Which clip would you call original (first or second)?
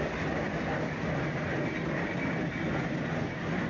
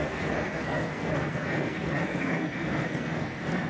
first